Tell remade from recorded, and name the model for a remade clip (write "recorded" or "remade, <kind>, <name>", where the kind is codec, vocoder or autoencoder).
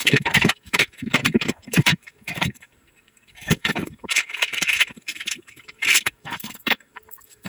remade, codec, SNAC